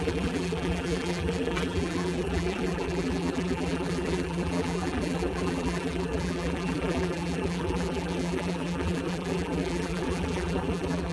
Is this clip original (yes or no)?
no